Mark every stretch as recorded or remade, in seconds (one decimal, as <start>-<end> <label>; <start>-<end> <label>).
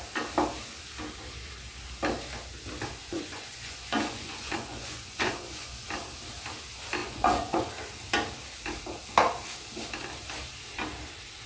0.0-3.0 recorded; 3.0-5.9 remade; 5.9-7.0 recorded; 7.0-7.7 remade; 7.7-11.5 recorded